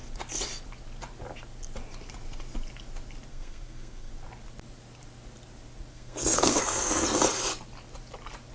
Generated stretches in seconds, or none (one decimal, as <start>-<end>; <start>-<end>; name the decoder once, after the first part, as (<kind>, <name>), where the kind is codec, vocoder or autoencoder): 3.3-4.1 (codec, SNAC); 5.9-6.6

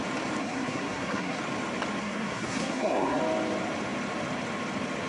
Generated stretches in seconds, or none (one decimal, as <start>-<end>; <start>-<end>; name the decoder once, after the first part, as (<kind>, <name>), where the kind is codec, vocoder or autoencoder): 0.4-1.4 (codec, SNAC); 2.0-3.2